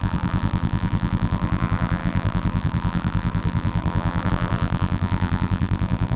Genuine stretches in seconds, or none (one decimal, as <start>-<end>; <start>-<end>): none